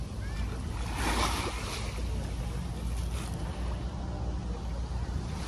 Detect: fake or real real